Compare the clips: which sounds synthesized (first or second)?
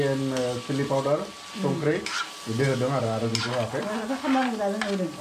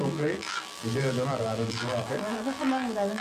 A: second